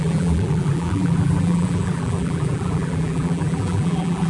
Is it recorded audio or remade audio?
remade